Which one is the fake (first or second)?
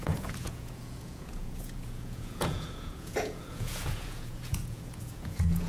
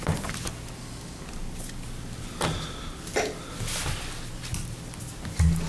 first